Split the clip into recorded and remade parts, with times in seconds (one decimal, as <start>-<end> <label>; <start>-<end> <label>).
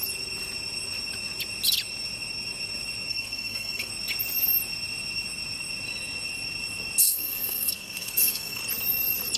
0.0-3.1 recorded; 3.1-3.9 remade; 3.9-7.0 recorded; 7.0-8.6 remade; 8.6-9.4 recorded